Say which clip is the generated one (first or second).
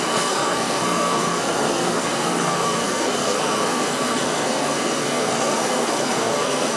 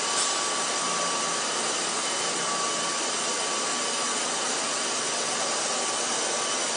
first